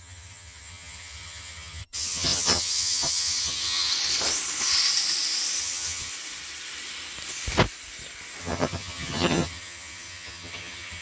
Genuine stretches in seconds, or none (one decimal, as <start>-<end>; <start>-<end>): 3.9-5.6; 6.1-8.4